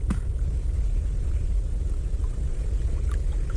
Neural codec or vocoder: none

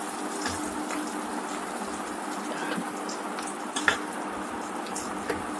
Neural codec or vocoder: none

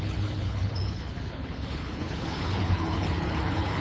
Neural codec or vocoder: codec, HILCodec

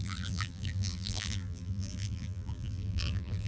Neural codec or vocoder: vocoder, BigVGAN v2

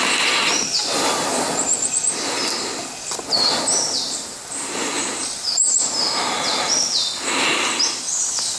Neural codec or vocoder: none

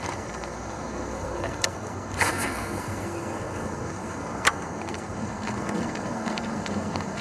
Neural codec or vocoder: codec, SNAC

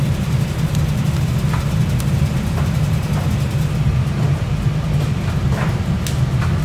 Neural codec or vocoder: none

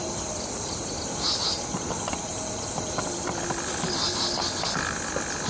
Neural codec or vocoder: none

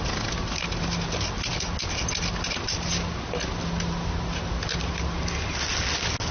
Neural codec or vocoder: none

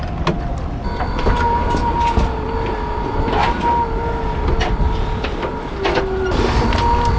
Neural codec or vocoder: none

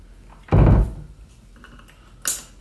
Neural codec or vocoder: none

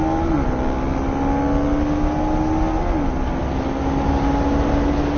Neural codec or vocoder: none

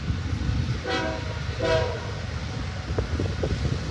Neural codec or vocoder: none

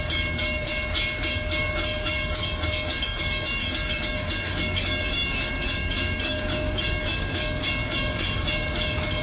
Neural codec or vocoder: codec, DAC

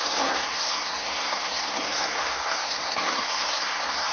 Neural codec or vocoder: codec, SNAC